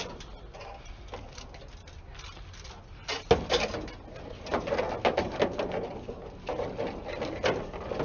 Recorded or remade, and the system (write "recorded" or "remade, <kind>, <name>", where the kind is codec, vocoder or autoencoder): recorded